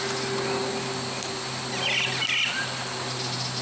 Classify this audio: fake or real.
real